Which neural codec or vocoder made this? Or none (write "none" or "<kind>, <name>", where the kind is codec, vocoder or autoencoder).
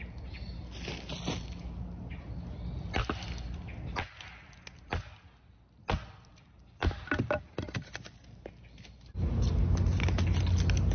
none